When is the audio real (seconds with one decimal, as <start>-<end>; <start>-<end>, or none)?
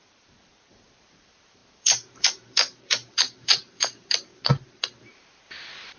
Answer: 4.3-5.0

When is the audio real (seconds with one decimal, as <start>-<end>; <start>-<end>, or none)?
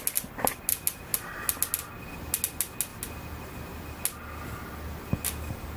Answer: 0.0-5.8